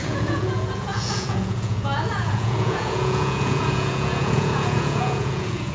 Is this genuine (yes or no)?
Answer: no